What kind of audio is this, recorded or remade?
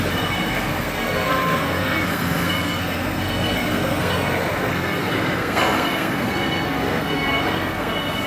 remade